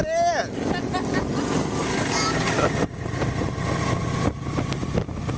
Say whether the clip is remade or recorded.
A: recorded